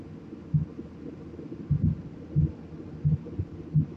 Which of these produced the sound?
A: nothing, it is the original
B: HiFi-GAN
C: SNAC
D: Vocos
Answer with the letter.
A